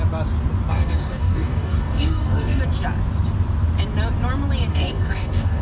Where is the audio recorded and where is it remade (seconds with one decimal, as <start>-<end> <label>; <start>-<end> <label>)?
0.0-0.7 recorded; 0.7-2.6 remade; 2.6-4.7 recorded; 4.7-5.6 remade